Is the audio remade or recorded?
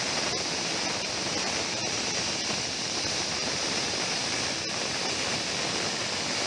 remade